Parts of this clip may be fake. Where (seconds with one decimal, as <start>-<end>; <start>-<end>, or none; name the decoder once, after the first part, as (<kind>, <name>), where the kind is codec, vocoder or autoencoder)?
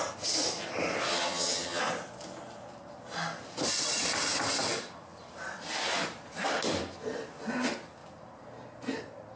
1.1-1.8 (vocoder, HiFi-GAN)